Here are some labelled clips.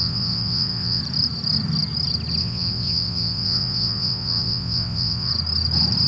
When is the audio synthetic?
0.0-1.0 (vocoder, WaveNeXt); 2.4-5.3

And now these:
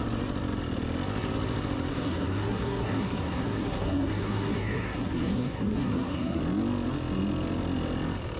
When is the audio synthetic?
1.9-6.4 (codec, SNAC)

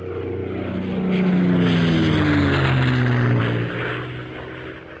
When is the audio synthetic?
none

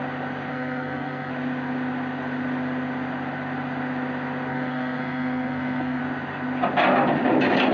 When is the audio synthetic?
0.5-1.3 (codec, SNAC); 4.5-6.0